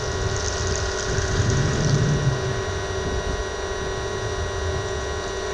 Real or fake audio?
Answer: real